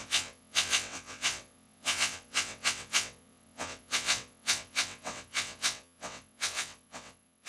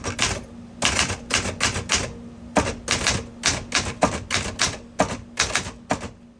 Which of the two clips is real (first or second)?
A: second